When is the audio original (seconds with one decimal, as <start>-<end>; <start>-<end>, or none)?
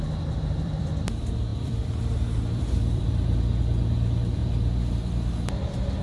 4.4-6.0